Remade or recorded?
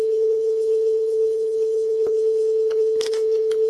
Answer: remade